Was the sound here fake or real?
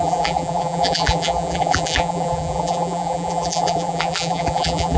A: fake